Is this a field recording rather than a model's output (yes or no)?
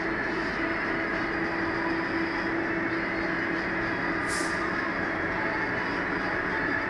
yes